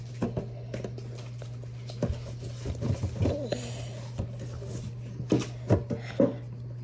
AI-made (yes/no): no